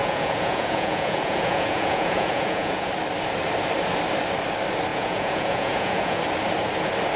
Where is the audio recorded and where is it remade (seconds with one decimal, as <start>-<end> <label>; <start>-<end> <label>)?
0.0-2.9 remade; 2.9-4.9 recorded; 4.9-6.2 remade; 6.2-7.2 recorded